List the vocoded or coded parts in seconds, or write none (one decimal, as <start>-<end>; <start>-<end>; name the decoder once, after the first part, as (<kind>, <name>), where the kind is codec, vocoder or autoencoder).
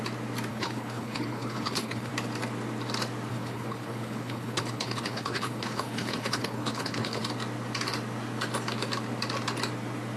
0.5-2.1 (codec, HILCodec); 3.3-7.2